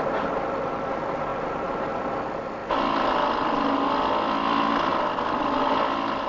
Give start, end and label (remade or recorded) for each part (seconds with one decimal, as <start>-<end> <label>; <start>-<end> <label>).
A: 0.0-6.3 recorded